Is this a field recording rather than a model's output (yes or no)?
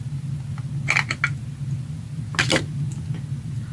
yes